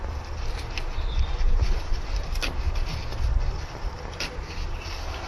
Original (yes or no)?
yes